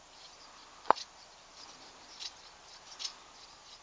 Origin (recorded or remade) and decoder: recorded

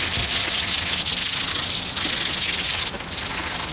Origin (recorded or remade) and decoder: recorded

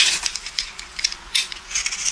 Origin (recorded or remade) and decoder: remade, vocoder, Vocos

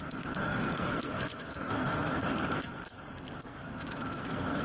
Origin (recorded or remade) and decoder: remade, codec, SNAC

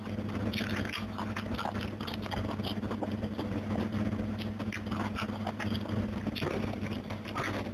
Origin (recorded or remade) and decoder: recorded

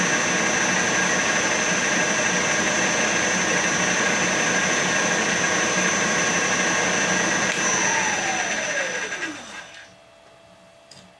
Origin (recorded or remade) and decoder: recorded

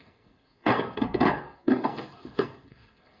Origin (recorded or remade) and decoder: remade, codec, SNAC